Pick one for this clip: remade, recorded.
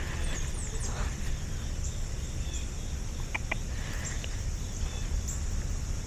recorded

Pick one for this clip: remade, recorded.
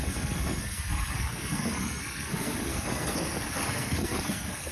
remade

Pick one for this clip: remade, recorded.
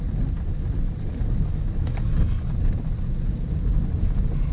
recorded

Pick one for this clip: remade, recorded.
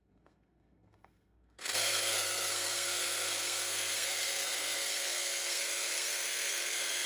remade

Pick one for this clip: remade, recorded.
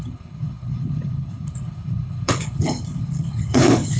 remade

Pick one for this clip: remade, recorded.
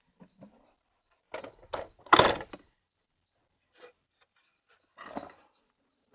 remade